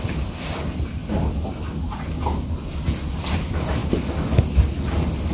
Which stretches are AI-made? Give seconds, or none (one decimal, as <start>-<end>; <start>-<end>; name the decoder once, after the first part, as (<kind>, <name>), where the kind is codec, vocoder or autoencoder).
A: none